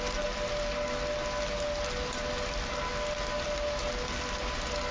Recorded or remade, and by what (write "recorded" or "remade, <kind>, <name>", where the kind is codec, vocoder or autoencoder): recorded